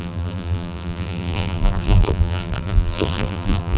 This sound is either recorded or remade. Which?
remade